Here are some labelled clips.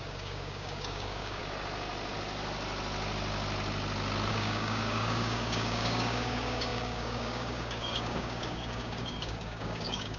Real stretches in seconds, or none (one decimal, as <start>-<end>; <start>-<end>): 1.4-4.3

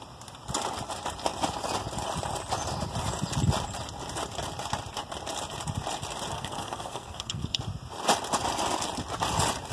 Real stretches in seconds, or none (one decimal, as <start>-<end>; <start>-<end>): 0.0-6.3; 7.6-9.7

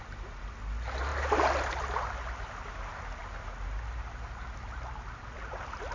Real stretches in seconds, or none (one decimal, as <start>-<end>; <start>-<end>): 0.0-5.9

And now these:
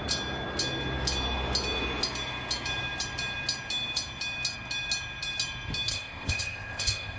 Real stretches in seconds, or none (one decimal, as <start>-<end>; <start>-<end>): 0.0-5.9

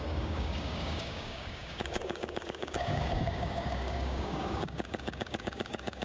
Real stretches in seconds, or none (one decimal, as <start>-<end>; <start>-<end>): none